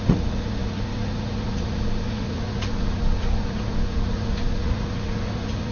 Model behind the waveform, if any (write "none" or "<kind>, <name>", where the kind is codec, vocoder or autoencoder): vocoder, Vocos